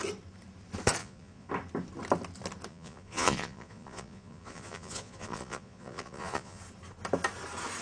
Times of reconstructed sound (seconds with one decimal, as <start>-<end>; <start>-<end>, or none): 1.0-1.5; 2.7-6.6